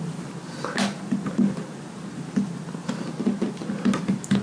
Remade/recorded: recorded